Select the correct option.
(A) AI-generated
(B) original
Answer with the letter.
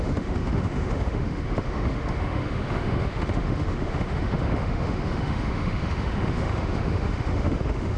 A